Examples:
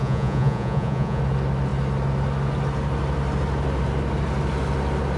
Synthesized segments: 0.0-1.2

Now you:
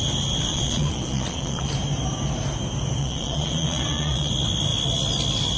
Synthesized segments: 0.5-1.7; 3.0-4.3

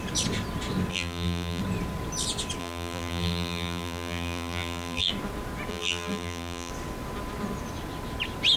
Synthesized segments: 0.9-1.6; 2.6-5.1; 5.7-6.7